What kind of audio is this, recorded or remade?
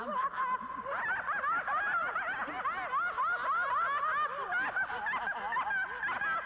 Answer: recorded